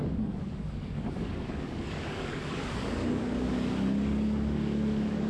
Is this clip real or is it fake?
fake